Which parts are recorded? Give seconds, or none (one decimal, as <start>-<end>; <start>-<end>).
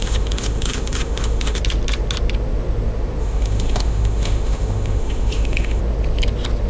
1.6-3.2; 5.8-6.7